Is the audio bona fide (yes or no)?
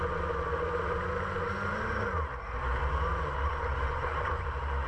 yes